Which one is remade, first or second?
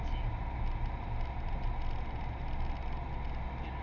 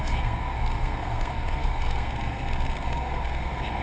second